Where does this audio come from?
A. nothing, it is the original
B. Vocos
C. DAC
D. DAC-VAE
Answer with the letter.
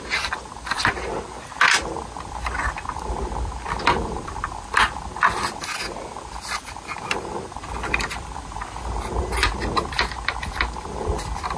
A